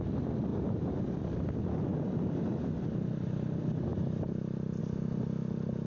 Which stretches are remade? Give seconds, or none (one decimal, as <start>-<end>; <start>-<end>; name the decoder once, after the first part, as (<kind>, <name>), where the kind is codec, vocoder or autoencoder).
0.5-1.0 (vocoder, BigVGAN v2); 3.9-4.8